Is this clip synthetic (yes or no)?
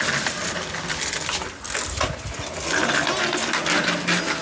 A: no